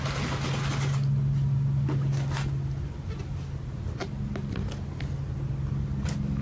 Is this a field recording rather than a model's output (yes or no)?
yes